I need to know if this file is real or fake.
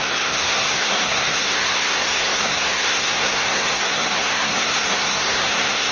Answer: fake